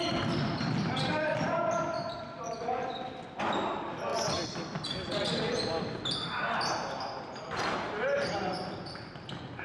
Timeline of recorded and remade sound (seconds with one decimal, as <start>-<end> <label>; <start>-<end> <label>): 0.0-9.6 recorded